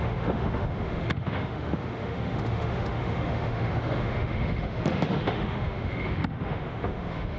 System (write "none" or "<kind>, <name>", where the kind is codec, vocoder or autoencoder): autoencoder, DAC-VAE